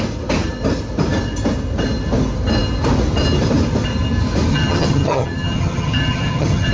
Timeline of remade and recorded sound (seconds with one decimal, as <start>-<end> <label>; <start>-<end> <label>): 0.0-4.5 recorded; 4.5-6.7 remade